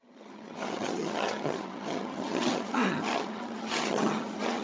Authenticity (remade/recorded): remade